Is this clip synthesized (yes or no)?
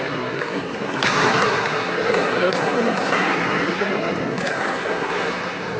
yes